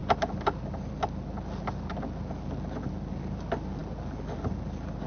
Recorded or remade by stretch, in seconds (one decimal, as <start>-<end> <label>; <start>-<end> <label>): 0.0-5.1 recorded